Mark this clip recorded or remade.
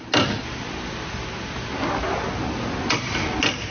recorded